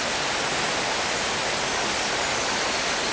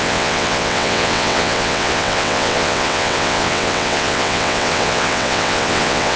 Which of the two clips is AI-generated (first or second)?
second